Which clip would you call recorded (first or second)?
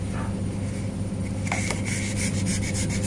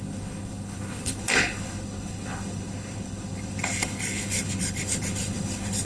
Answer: first